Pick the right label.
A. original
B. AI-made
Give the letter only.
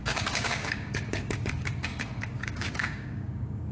B